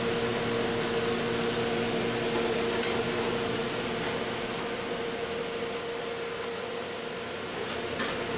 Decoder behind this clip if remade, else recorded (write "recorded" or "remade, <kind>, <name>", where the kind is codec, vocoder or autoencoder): recorded